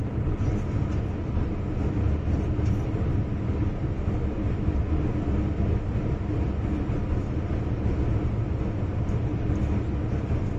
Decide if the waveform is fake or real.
real